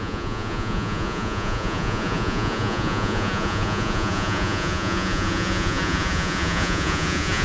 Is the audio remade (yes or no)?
yes